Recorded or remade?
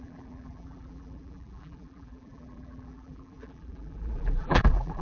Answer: remade